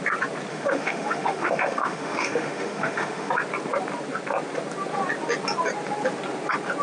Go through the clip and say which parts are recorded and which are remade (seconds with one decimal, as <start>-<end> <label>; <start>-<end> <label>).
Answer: 0.0-0.5 recorded; 0.5-3.3 remade; 3.3-6.8 recorded

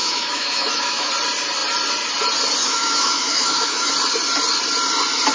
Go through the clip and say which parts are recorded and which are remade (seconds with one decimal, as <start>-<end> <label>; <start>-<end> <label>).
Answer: 0.0-1.1 remade; 1.1-2.6 recorded; 2.6-3.9 remade; 3.9-5.3 recorded

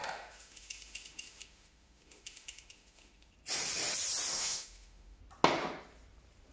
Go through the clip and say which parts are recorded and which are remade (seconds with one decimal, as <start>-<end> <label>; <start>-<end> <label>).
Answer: 0.0-3.3 remade; 3.3-4.3 recorded; 4.3-5.2 remade; 5.2-6.5 recorded

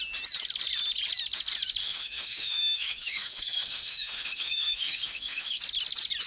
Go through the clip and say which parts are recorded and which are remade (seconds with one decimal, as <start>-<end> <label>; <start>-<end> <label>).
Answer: 0.0-1.8 recorded; 1.8-5.6 remade; 5.6-6.3 recorded

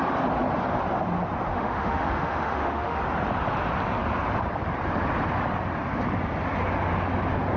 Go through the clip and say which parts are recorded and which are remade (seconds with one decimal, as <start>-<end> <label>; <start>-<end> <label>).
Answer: 0.0-1.5 recorded; 1.5-3.0 remade; 3.0-7.6 recorded

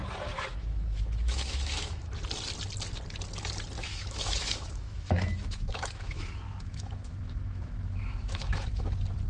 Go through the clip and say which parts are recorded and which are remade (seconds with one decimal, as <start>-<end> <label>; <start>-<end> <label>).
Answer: 0.0-0.5 recorded; 0.5-2.1 remade; 2.1-3.9 recorded; 3.9-8.8 remade; 8.8-9.3 recorded

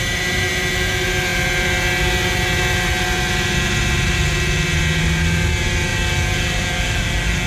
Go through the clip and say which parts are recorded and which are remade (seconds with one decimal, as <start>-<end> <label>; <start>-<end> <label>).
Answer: 0.0-7.5 recorded